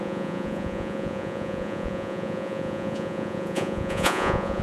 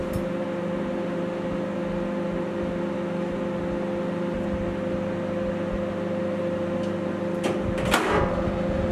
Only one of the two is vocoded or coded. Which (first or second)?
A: first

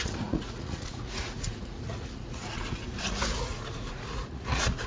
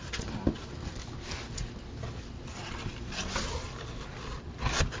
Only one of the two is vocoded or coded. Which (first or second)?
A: first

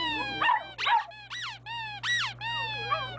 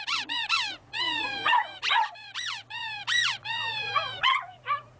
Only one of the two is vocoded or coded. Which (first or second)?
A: second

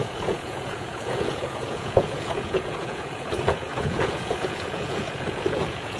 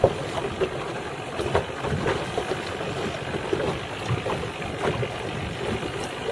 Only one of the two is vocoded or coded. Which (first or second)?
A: first